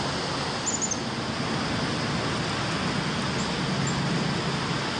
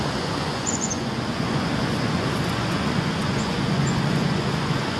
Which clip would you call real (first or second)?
first